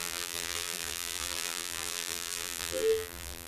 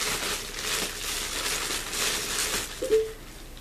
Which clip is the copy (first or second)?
first